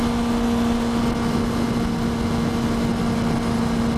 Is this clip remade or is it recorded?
recorded